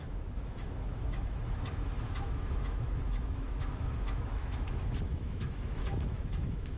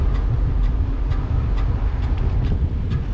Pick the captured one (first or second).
second